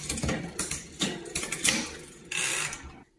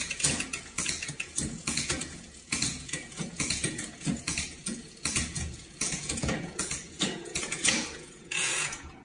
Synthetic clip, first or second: second